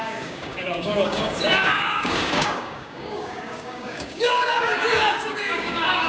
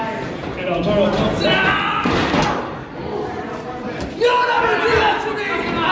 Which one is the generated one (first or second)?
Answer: first